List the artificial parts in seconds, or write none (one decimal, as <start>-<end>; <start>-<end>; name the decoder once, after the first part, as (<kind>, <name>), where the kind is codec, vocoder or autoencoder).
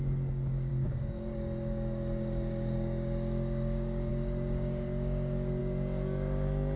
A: 0.0-6.8 (codec, DAC)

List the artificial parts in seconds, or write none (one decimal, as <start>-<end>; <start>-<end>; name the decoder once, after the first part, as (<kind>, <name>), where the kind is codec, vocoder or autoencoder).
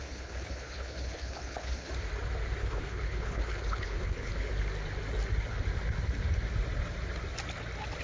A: 0.0-1.9 (codec, HILCodec); 2.6-4.5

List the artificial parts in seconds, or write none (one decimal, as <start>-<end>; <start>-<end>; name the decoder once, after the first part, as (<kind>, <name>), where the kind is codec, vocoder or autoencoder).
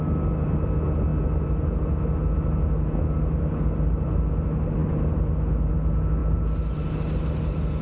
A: none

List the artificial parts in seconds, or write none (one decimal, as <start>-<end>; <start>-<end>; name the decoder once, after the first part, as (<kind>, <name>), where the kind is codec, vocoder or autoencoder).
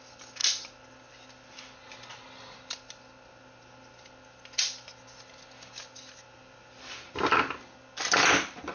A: none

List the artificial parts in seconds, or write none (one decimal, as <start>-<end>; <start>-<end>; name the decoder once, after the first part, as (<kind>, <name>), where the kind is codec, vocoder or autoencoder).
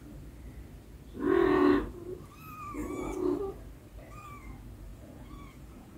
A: 4.9-6.0 (vocoder, Vocos)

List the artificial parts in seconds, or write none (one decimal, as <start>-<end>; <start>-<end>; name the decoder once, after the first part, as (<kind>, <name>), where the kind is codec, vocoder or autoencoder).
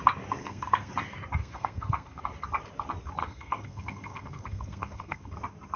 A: 0.4-0.9 (codec, SNAC); 1.4-2.2; 3.2-5.3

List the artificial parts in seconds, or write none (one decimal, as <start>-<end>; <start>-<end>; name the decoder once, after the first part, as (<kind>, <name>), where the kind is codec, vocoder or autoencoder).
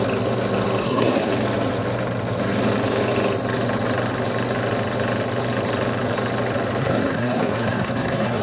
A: 0.8-1.3 (codec, SNAC); 6.8-8.4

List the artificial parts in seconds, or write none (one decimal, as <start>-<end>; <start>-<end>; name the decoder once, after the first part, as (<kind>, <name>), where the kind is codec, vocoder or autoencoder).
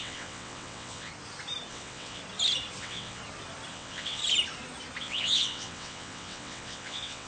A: 0.0-1.1 (vocoder, WaveNeXt); 1.7-2.2; 2.8-3.2; 3.7-4.2; 5.0-7.3